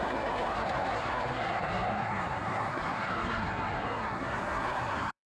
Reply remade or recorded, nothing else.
remade